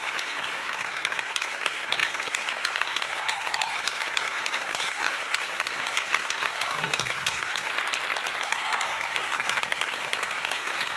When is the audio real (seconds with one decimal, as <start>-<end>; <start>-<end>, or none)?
7.7-8.4